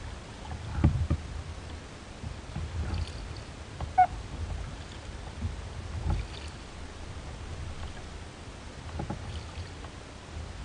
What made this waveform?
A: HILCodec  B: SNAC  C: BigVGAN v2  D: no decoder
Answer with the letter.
D